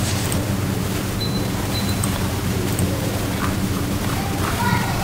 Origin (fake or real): fake